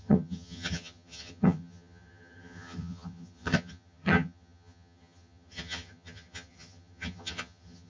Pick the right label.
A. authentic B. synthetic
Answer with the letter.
B